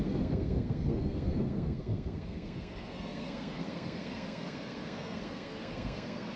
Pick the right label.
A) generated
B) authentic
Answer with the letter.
A